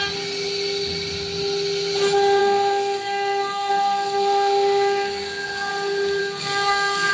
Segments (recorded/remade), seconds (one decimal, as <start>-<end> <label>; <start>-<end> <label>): 0.0-2.4 recorded; 2.4-5.7 remade; 5.7-6.2 recorded; 6.2-7.1 remade